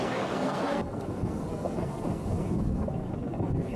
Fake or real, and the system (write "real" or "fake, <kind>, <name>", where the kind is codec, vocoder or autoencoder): fake, codec, SNAC